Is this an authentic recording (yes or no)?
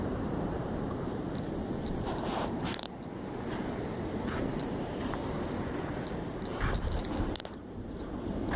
no